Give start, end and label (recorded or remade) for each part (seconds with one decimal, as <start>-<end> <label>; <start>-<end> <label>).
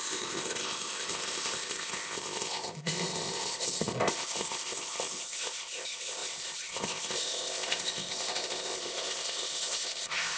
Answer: 0.0-10.4 remade